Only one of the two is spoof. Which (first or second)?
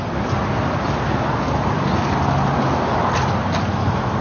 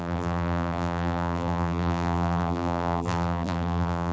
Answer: second